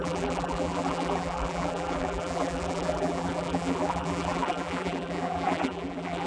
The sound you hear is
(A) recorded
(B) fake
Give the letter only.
B